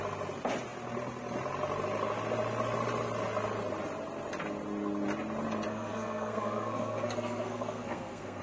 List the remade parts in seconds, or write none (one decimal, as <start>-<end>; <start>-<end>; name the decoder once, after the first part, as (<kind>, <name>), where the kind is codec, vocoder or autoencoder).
5.7-8.4 (codec, SNAC)